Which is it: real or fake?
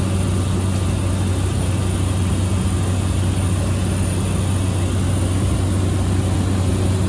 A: real